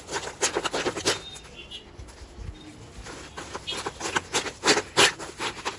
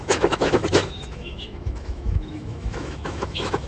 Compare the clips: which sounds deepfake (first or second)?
second